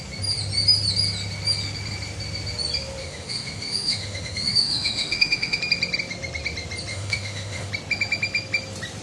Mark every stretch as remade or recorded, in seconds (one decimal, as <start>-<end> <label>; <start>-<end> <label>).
0.0-3.0 recorded; 3.0-5.6 remade; 5.6-6.9 recorded; 6.9-7.7 remade; 7.7-9.0 recorded